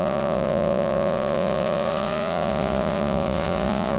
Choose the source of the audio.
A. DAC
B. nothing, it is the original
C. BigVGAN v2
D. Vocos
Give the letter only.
D